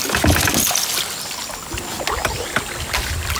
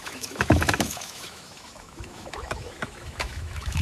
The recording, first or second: first